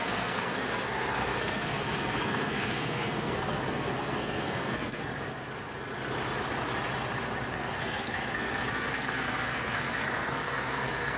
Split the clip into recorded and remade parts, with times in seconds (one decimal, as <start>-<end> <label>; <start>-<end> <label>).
0.0-5.1 remade; 5.1-7.5 recorded; 7.5-11.2 remade